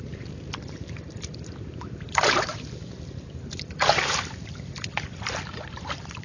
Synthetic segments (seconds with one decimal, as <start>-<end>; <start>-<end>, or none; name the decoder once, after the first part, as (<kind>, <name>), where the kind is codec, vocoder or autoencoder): 0.0-2.5 (vocoder, BigVGAN v2); 3.3-6.2